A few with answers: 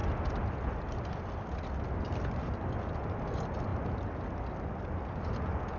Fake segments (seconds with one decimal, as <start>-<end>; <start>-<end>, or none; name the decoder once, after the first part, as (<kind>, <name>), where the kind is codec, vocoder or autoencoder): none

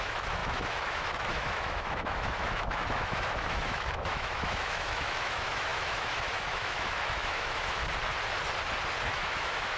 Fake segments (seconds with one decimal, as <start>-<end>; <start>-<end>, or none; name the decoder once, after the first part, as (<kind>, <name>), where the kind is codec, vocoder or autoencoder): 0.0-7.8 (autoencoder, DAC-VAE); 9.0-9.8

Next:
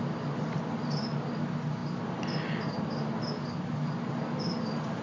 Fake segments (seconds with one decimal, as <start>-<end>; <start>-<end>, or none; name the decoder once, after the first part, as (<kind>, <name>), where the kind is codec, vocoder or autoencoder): none

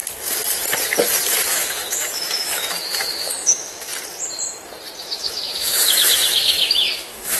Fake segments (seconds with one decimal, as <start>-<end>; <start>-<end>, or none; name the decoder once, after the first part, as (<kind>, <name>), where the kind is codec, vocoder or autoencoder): 1.5-3.9 (autoencoder, DAC-VAE); 5.0-7.4

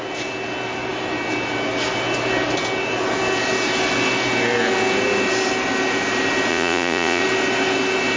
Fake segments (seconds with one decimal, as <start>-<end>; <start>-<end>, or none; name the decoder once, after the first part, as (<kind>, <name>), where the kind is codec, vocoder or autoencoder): 6.5-7.2 (vocoder, Vocos)

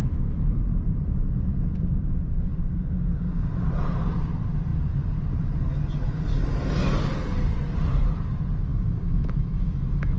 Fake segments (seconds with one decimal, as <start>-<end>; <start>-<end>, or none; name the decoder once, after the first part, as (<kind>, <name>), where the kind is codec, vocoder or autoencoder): 0.0-0.6 (autoencoder, DAC-VAE); 8.7-10.2

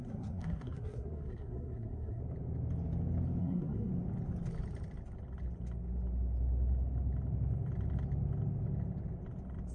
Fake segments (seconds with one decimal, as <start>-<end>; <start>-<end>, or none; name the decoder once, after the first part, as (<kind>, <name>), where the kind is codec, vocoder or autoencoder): 0.0-2.2 (codec, SNAC); 3.4-3.9

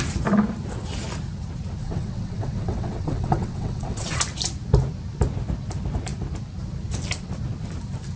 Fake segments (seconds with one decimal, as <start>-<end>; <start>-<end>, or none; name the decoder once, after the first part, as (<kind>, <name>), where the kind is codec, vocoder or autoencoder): 1.8-4.2 (vocoder, WaveNeXt)